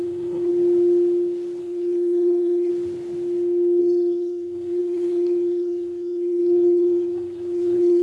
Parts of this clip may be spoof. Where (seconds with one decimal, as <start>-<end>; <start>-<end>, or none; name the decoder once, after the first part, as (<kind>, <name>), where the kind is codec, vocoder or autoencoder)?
0.0-0.5 (codec, SNAC); 1.6-2.7; 3.8-8.0